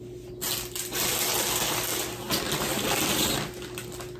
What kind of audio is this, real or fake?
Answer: real